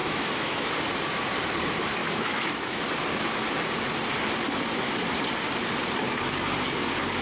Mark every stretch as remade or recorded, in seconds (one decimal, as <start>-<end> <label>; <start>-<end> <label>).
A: 0.0-0.7 remade; 0.7-2.0 recorded; 2.0-2.8 remade; 2.8-7.2 recorded